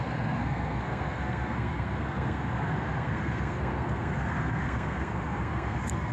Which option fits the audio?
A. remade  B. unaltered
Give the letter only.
A